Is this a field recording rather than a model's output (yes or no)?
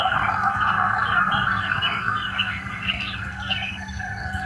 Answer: no